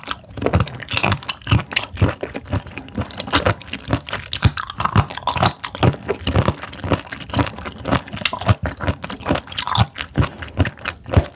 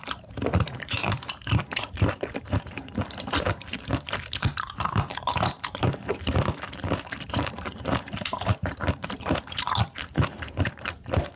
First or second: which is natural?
first